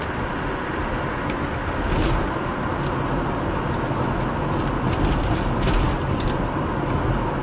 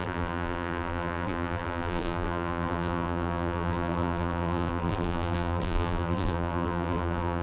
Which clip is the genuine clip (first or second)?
first